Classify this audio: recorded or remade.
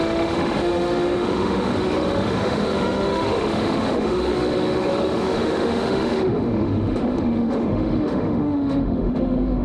remade